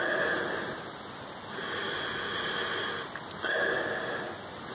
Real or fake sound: real